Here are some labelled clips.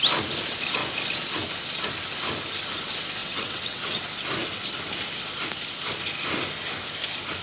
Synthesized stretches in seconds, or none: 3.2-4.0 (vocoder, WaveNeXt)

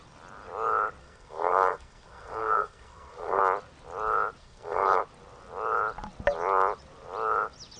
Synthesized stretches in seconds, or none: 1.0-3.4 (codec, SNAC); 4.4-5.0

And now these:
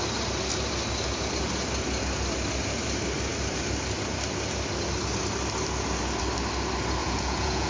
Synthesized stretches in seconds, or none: 7.0-7.7 (vocoder, Vocos)